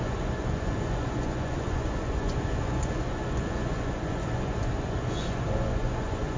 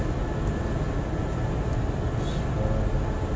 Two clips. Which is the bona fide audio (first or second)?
second